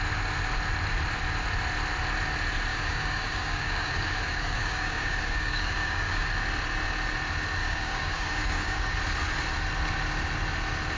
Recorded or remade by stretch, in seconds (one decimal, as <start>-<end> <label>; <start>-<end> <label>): 0.0-2.7 recorded; 2.7-6.3 remade; 6.3-7.6 recorded; 7.6-9.0 remade; 9.0-11.0 recorded

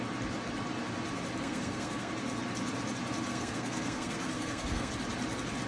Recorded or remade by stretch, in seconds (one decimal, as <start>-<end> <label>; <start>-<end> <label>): 0.0-1.4 recorded; 1.4-2.1 remade; 2.1-3.3 recorded; 3.3-4.9 remade; 4.9-5.7 recorded